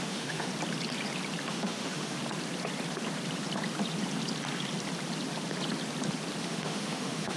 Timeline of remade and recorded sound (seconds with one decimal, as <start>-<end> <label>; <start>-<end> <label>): 0.0-0.5 remade; 0.5-1.5 recorded; 1.5-2.2 remade; 2.2-6.4 recorded; 6.4-7.4 remade